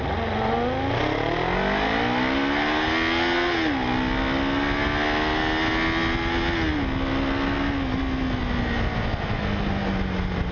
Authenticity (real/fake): real